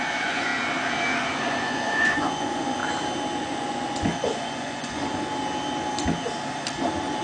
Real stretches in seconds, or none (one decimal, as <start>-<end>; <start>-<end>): 0.5-1.4; 2.8-3.4; 5.0-7.2